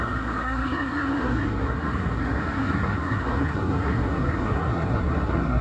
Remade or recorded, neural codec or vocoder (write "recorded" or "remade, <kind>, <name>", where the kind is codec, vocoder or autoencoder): remade, codec, SNAC